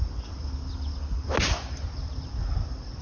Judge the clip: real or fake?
real